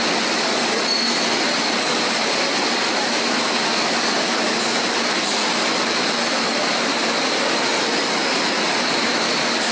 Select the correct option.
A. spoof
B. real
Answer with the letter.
B